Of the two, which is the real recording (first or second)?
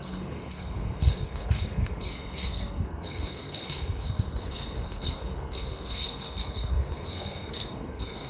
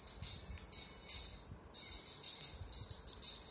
second